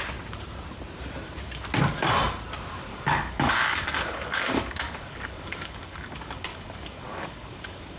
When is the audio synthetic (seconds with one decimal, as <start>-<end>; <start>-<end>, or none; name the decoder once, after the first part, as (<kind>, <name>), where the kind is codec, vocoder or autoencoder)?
2.9-8.0 (codec, DAC)